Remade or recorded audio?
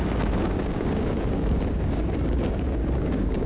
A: remade